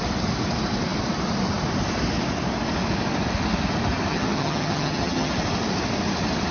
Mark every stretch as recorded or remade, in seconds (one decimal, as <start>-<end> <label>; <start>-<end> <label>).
0.0-4.1 recorded; 4.1-5.3 remade; 5.3-6.5 recorded